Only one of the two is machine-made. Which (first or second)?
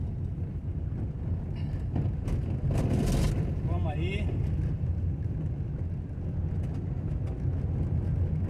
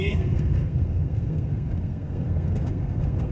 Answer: second